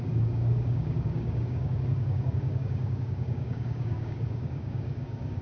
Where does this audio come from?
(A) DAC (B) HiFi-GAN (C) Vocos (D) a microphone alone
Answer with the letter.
A